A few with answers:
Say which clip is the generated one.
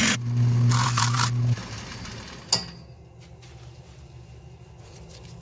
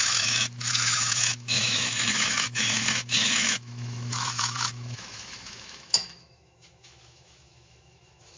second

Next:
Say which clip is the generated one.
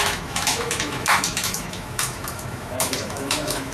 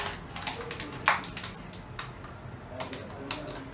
first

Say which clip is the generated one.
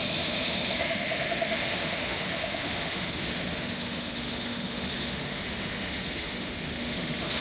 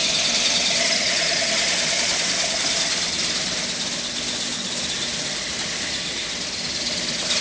first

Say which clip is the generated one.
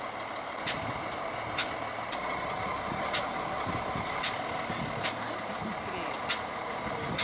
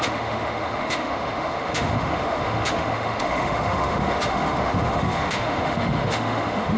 second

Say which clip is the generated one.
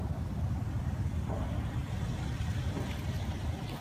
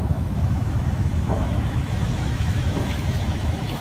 second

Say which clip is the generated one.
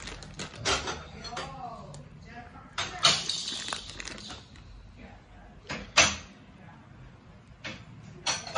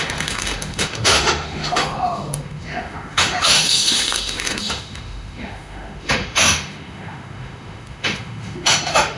second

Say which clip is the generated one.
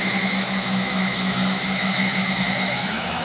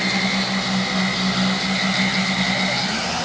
first